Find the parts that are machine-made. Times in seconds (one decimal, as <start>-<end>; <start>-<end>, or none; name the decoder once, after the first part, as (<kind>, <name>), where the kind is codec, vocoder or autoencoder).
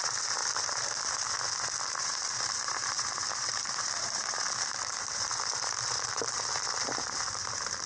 0.0-7.9 (vocoder, BigVGAN v2)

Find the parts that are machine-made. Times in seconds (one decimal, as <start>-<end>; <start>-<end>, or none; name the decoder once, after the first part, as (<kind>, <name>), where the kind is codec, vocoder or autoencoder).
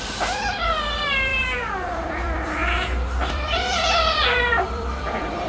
0.0-2.6 (vocoder, BigVGAN v2); 3.3-5.5